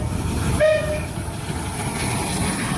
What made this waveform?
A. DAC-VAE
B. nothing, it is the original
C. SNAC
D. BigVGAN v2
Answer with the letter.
B